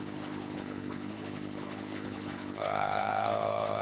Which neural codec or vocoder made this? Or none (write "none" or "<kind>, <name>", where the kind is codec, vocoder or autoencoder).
codec, HILCodec